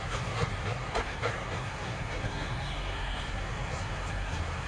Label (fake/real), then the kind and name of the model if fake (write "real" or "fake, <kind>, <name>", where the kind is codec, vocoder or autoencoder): fake, codec, SNAC